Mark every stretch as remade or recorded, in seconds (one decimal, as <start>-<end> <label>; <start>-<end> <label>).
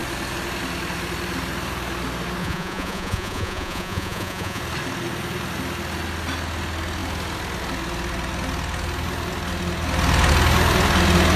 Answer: 0.0-2.4 recorded; 2.4-4.6 remade; 4.6-11.4 recorded